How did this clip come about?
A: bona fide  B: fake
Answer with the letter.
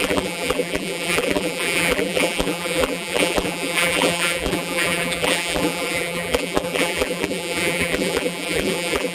B